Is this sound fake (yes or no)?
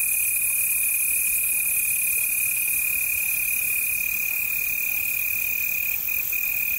no